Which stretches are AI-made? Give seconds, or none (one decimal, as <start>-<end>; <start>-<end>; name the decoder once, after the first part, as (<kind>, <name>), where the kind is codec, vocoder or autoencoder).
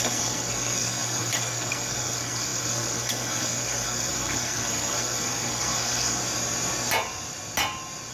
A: 0.0-6.2 (codec, SNAC)